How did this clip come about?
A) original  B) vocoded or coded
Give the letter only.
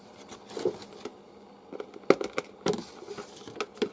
A